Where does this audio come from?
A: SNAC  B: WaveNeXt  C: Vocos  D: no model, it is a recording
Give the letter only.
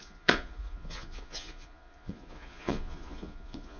C